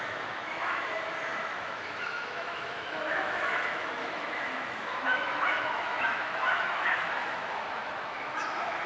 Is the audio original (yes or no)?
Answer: no